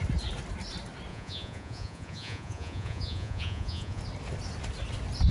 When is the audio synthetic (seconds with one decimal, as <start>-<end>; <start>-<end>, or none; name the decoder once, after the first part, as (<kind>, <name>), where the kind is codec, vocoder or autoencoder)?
1.1-4.0 (vocoder, Vocos)